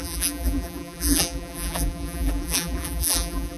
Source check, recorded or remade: remade